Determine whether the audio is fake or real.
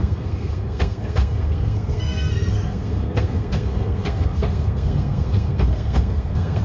fake